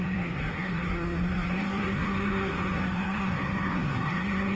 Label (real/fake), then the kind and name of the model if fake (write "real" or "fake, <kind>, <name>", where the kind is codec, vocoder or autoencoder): fake, codec, SNAC